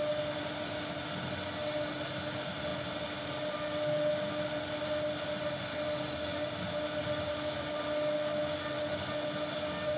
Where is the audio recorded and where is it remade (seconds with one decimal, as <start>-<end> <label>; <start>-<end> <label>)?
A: 0.0-10.0 recorded